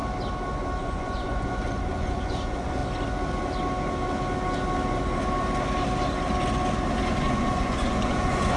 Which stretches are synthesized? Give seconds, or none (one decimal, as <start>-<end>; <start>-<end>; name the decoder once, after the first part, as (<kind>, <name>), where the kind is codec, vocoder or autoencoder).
0.8-2.8 (vocoder, Vocos); 7.1-8.6

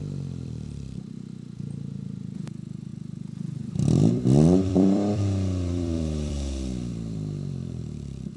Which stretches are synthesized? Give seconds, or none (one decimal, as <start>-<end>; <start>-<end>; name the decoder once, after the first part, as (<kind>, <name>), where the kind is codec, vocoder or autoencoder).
0.0-2.5 (vocoder, BigVGAN v2); 2.9-7.8

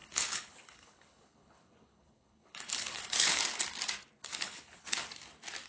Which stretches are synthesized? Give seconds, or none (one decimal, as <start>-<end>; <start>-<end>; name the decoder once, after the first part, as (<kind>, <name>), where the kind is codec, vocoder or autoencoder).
0.0-3.4 (codec, HILCodec); 4.2-4.9

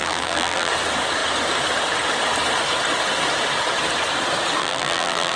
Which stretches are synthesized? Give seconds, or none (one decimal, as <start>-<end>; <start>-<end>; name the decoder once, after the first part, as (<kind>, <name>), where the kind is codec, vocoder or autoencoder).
0.0-0.7 (vocoder, BigVGAN v2); 4.6-5.4

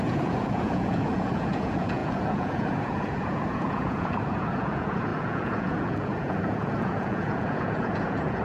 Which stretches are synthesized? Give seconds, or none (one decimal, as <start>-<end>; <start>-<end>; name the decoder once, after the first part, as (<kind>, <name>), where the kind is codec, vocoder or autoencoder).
0.0-8.4 (vocoder, Vocos)

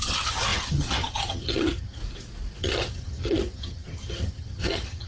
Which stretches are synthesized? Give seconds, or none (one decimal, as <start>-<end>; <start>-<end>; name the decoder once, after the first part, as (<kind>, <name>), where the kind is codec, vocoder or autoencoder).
0.0-2.0 (vocoder, HiFi-GAN); 2.6-5.1

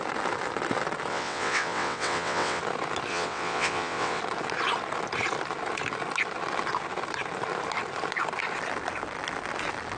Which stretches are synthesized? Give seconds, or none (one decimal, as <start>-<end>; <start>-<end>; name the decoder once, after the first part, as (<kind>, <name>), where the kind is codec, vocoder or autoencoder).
1.1-2.6 (vocoder, WaveNeXt); 3.1-4.2